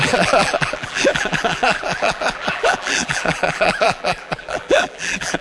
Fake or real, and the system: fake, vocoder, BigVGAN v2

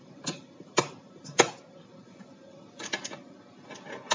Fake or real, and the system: fake, vocoder, BigVGAN v2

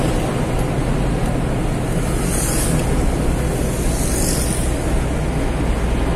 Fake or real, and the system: real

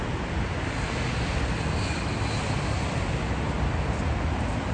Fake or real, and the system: real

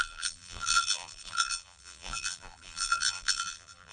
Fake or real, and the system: fake, vocoder, BigVGAN v2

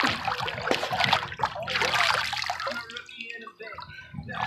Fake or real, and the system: real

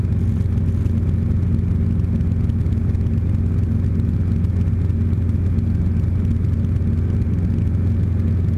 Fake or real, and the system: real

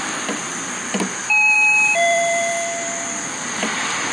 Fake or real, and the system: fake, vocoder, BigVGAN v2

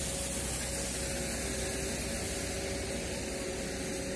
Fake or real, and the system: real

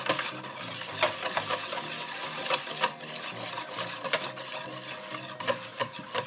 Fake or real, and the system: real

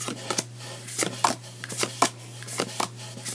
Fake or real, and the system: real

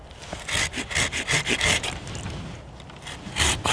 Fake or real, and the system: real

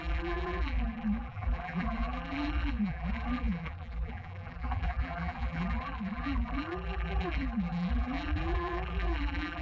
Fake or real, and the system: fake, vocoder, BigVGAN v2